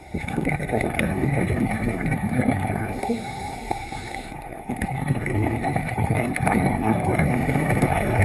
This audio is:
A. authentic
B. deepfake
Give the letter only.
B